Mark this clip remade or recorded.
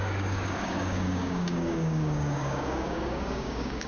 remade